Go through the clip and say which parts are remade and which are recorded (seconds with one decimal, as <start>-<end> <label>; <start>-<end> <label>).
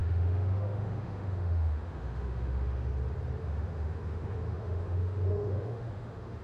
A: 0.0-2.9 remade; 2.9-3.4 recorded; 3.4-6.4 remade